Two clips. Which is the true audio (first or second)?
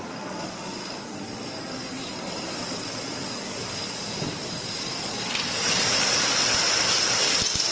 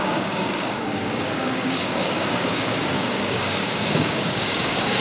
first